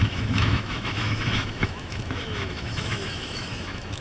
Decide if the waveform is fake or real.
fake